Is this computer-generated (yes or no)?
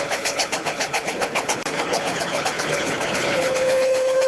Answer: yes